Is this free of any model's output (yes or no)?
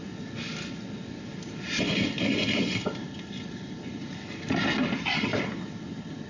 yes